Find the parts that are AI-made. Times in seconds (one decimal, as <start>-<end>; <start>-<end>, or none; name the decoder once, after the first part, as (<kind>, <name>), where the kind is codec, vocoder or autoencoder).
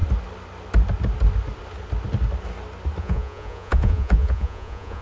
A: 3.0-5.0 (vocoder, Vocos)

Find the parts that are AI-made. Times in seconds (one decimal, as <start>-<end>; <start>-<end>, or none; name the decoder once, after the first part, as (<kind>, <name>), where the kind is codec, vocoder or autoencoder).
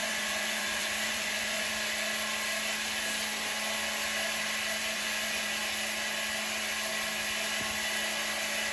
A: 0.0-1.7 (vocoder, Vocos); 4.8-5.5